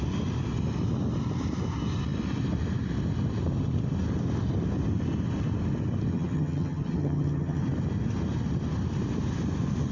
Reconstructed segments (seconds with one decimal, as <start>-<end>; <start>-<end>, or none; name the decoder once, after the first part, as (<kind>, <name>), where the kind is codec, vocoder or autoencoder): 6.1-7.6 (vocoder, HiFi-GAN)